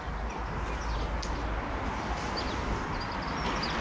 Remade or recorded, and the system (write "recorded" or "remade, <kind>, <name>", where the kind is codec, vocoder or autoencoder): recorded